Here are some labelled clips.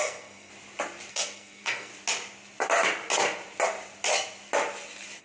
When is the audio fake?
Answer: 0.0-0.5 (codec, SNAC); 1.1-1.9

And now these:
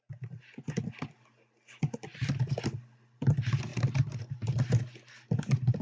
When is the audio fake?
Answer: none

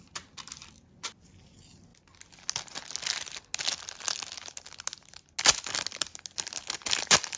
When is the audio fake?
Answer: none

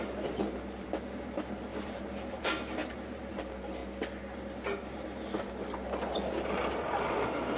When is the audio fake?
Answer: 1.7-2.4 (vocoder, BigVGAN v2); 2.8-3.3

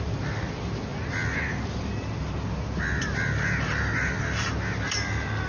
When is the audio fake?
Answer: none

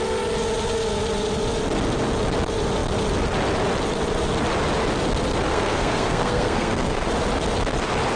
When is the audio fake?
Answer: 5.5-7.1 (codec, SNAC)

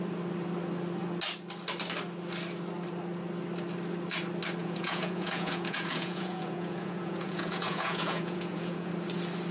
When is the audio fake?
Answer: 4.6-8.9 (vocoder, Vocos)